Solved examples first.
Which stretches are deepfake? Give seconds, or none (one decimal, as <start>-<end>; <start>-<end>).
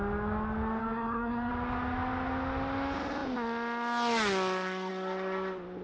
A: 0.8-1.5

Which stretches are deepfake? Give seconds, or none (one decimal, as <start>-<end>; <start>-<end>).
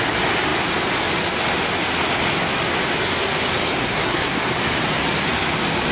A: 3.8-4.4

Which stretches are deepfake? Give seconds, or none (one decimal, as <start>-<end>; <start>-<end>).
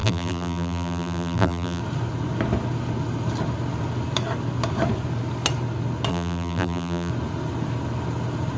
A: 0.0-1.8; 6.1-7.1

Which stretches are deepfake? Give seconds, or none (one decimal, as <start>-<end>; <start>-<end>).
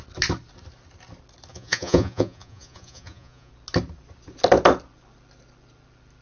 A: 1.5-3.5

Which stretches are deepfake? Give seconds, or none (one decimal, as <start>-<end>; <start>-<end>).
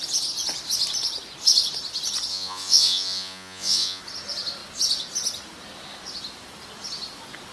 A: 2.3-4.0